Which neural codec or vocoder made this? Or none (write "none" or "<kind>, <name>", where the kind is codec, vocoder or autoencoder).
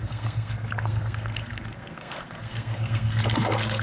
codec, SNAC